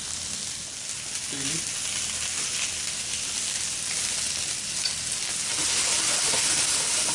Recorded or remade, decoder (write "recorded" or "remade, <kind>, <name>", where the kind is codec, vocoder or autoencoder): recorded